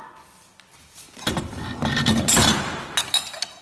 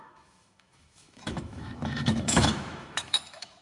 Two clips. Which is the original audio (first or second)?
first